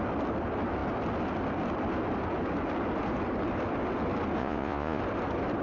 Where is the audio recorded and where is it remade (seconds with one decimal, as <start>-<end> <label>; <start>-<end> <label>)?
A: 0.0-4.4 recorded; 4.4-5.0 remade; 5.0-5.6 recorded